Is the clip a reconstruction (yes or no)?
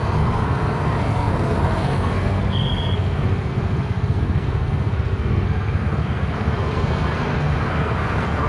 yes